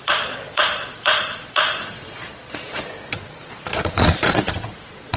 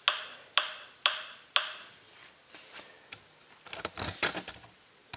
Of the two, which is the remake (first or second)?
first